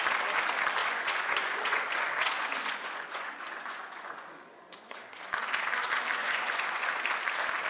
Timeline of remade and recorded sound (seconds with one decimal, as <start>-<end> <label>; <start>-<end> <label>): 0.0-0.8 recorded; 0.8-5.2 remade; 5.2-6.2 recorded; 6.2-6.9 remade; 6.9-7.7 recorded